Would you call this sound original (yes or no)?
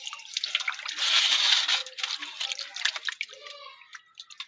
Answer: yes